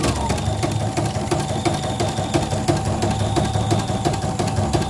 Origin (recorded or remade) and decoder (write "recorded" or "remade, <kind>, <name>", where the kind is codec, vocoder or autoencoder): recorded